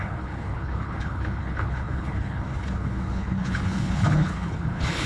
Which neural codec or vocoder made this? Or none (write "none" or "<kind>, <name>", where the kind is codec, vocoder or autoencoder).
codec, HILCodec